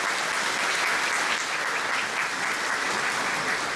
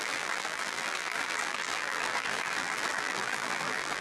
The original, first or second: first